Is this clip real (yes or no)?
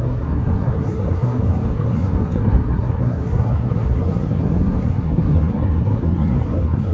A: no